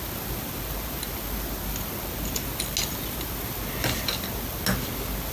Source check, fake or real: real